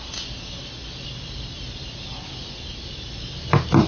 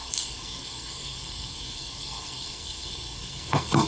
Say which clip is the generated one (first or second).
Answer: second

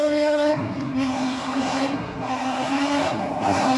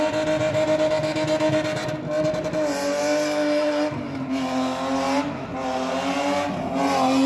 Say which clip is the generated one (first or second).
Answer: first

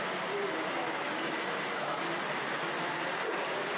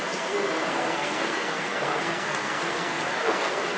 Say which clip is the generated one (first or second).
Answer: second